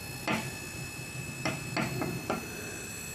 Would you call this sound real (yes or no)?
yes